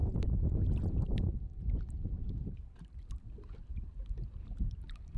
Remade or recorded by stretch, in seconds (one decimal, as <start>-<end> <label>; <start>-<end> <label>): 0.0-5.2 remade